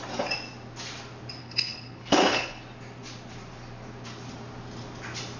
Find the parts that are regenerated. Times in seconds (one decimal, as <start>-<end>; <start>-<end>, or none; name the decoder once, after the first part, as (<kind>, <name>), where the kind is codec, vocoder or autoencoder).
1.4-2.6 (codec, HILCodec)